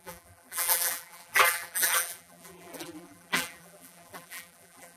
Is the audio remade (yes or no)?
yes